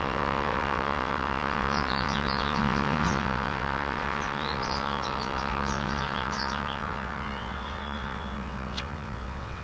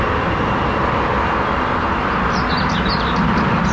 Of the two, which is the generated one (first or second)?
first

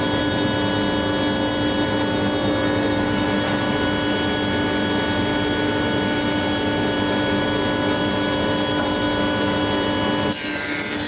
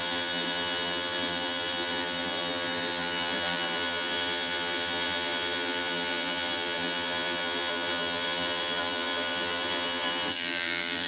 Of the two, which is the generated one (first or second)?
second